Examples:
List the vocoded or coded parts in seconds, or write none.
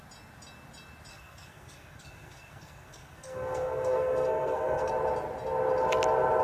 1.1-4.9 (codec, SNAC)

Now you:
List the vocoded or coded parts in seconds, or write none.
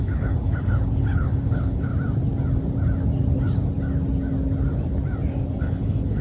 0.0-1.9 (codec, HILCodec); 5.6-6.2